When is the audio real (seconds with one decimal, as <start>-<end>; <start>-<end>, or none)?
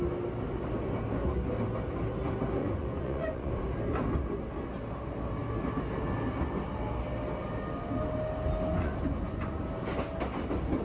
0.0-2.6; 3.5-8.7; 9.6-10.8